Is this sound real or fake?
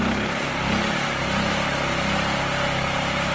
real